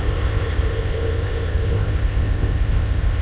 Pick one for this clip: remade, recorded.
remade